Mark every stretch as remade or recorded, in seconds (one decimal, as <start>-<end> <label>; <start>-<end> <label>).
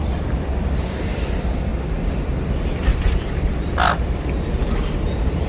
0.0-1.7 remade; 1.7-2.4 recorded; 2.4-5.5 remade